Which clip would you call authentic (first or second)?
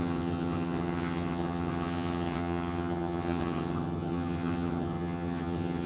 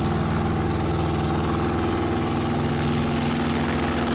second